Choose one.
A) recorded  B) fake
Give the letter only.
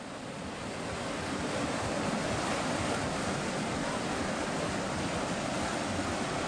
A